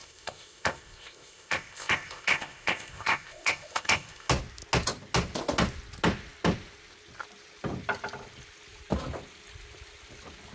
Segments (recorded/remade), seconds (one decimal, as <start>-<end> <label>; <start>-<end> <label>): 0.0-4.3 remade; 4.3-10.5 recorded